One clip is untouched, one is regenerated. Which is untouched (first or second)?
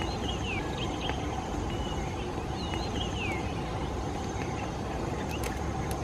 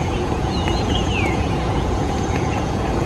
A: first